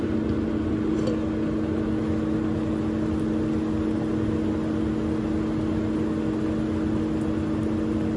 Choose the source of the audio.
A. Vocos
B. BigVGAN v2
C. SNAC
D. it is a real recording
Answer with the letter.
D